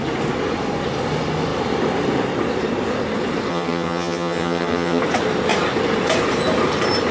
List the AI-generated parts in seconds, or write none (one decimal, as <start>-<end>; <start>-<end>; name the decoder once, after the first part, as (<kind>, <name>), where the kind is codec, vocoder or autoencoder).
3.5-5.0 (vocoder, HiFi-GAN)